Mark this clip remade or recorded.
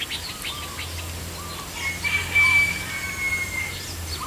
recorded